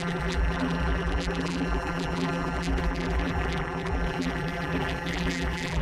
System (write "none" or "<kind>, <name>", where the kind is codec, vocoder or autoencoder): vocoder, BigVGAN v2